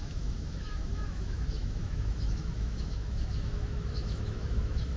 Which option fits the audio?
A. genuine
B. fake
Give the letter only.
B